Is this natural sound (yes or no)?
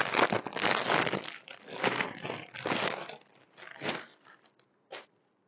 yes